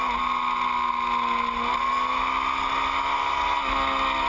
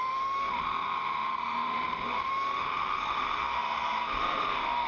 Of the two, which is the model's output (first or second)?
second